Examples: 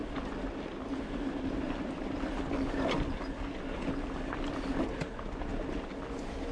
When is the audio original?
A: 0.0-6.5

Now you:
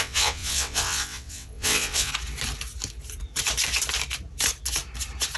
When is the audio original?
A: 2.1-5.4